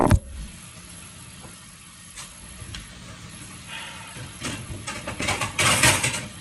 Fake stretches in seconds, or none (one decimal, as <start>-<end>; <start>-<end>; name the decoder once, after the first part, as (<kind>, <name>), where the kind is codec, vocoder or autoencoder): 0.0-2.9 (vocoder, Vocos); 3.3-6.4